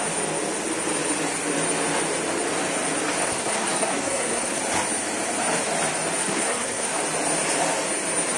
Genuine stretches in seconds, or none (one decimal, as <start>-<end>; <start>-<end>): 0.0-3.2; 4.6-6.2; 7.0-8.4